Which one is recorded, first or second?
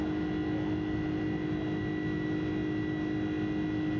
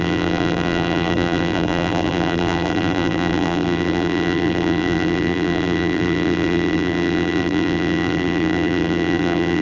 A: first